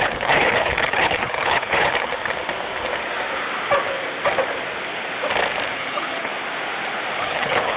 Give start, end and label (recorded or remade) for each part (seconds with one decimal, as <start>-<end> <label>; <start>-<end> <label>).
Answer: 0.0-2.1 remade; 2.1-5.7 recorded; 5.7-6.3 remade; 6.3-7.2 recorded; 7.2-7.8 remade